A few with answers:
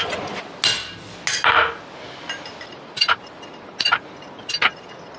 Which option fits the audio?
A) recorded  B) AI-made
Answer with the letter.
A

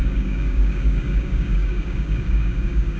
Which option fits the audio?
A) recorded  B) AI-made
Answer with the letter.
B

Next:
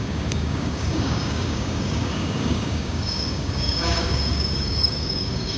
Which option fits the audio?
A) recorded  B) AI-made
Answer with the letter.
B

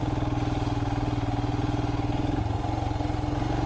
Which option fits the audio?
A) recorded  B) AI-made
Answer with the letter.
A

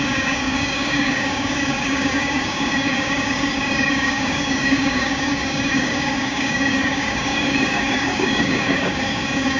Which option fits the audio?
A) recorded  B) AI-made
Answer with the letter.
B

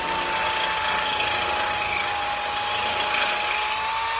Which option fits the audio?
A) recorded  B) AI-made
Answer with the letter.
A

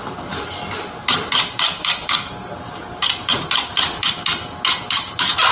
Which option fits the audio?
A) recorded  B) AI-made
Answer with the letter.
A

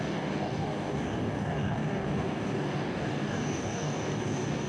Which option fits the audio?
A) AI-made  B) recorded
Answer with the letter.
A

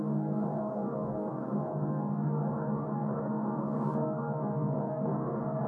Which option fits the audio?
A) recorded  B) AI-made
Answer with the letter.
B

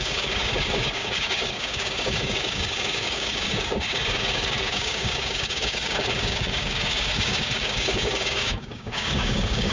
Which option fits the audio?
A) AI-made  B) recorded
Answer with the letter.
A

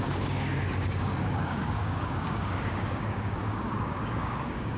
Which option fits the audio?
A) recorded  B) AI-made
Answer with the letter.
B